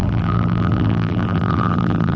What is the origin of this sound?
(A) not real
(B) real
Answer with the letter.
A